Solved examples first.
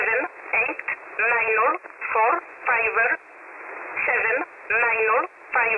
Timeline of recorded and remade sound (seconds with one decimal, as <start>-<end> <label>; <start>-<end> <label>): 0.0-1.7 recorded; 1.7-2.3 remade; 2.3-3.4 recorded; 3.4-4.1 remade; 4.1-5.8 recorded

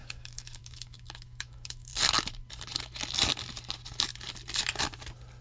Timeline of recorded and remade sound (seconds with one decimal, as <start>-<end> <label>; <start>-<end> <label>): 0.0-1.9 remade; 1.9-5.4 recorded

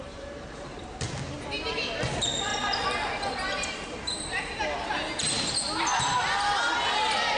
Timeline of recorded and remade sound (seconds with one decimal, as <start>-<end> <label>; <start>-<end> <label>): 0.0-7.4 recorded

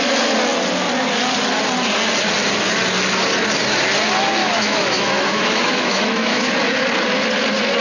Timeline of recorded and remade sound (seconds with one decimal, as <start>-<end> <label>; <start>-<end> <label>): 0.0-4.4 recorded; 4.4-6.5 remade; 6.5-7.8 recorded